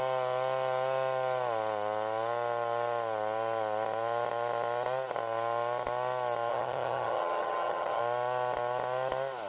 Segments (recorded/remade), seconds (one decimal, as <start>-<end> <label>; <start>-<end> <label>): 0.0-6.5 recorded; 6.5-8.0 remade; 8.0-9.5 recorded